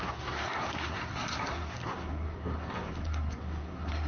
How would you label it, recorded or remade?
remade